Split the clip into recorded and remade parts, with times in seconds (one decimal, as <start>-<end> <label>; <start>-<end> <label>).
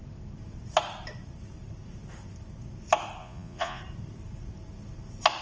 0.0-3.2 recorded; 3.2-3.8 remade; 3.8-5.4 recorded